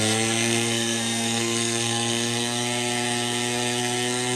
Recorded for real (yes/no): no